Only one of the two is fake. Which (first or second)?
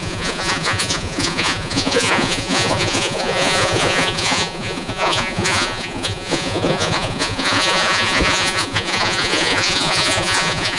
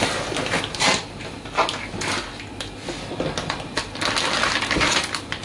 first